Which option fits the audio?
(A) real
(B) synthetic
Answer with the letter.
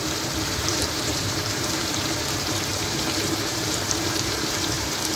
B